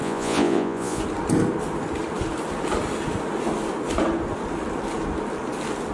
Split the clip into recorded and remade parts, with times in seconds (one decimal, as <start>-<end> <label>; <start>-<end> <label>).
0.0-1.0 remade; 1.0-5.9 recorded